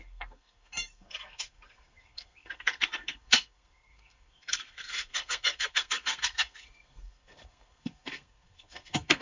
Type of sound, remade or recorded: remade